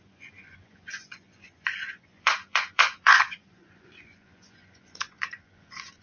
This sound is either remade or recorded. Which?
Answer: remade